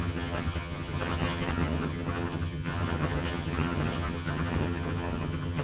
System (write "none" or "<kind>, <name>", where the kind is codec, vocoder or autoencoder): vocoder, HiFi-GAN